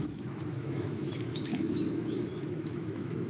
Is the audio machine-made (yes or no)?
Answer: yes